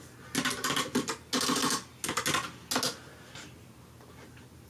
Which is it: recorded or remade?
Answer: recorded